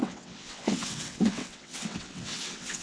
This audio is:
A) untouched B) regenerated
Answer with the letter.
B